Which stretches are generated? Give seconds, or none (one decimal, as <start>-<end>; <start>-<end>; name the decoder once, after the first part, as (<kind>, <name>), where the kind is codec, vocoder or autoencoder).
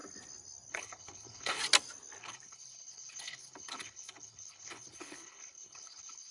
0.7-1.6 (codec, HILCodec); 2.2-6.3